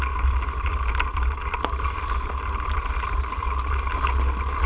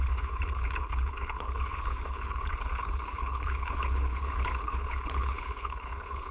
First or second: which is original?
first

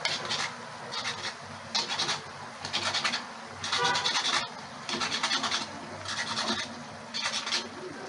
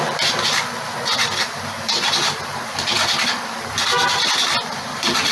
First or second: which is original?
first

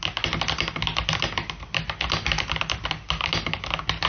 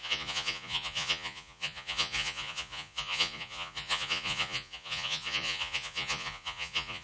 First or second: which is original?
first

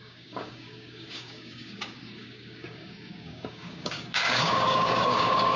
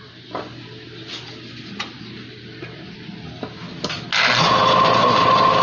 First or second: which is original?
second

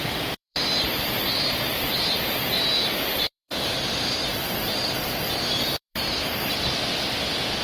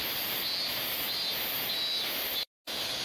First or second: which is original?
second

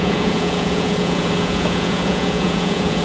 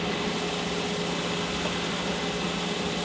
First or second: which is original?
second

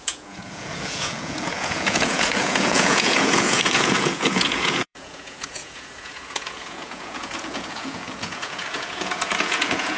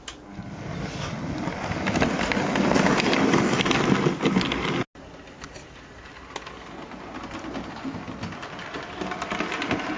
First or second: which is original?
second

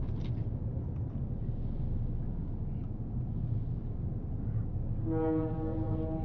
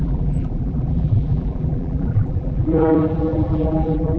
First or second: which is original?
first